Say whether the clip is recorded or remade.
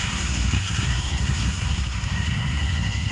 remade